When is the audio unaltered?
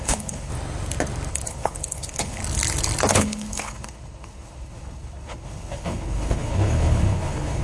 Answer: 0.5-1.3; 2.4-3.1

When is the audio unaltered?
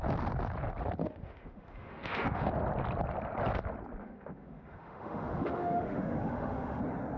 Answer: 0.0-1.0; 2.5-4.0; 6.8-7.2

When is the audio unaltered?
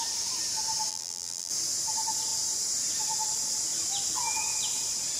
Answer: 0.0-0.9; 1.5-5.2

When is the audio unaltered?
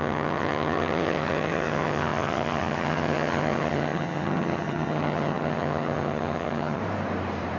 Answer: 6.8-7.6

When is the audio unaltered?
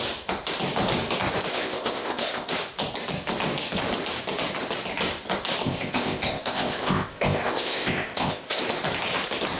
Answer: 0.0-1.5; 2.5-5.6; 8.6-9.6